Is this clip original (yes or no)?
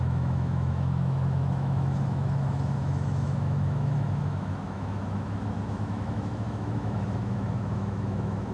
no